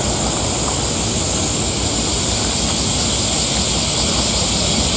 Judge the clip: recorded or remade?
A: recorded